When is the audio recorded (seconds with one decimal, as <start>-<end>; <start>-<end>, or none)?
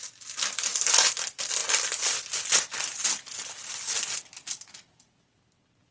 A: 0.0-5.9